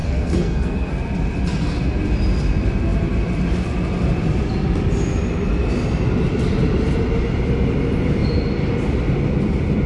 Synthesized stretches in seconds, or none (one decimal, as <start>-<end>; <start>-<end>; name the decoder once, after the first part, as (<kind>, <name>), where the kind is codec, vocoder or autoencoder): 0.0-0.9 (codec, SNAC)